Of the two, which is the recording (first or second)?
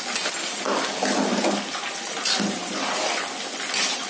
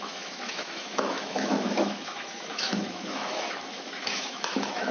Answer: first